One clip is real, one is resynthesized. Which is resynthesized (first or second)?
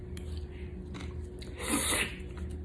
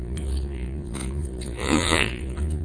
second